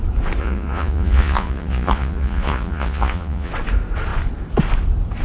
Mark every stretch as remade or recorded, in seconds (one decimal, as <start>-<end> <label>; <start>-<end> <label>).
0.0-0.4 recorded; 0.4-3.5 remade; 3.5-5.2 recorded